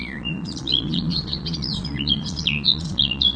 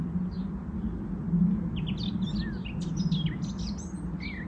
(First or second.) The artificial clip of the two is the first